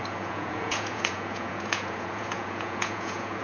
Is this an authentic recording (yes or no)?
no